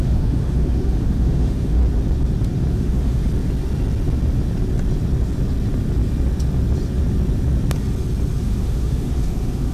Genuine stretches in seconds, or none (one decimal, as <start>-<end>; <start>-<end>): 1.8-2.7; 3.2-8.4